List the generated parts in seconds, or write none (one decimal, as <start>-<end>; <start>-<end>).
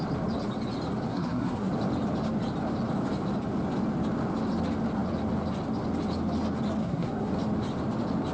1.1-1.7; 6.8-7.3